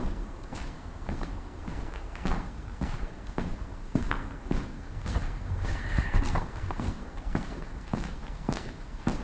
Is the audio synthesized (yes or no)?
yes